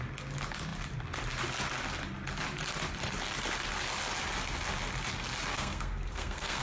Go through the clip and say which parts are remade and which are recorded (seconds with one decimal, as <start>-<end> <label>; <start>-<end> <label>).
0.0-5.5 recorded; 5.5-6.6 remade